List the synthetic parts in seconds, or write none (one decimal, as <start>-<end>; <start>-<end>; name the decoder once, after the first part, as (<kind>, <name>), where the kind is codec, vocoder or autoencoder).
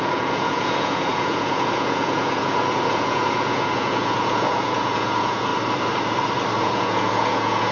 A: 0.0-5.5 (vocoder, Vocos); 6.6-7.7